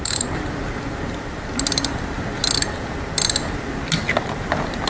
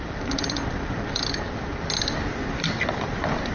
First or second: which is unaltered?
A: first